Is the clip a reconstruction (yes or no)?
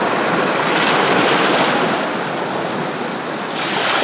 no